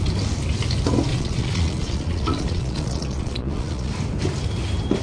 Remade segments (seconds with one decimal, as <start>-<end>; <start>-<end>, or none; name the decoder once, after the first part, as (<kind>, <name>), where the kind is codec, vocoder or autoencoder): 1.1-3.9 (vocoder, Vocos)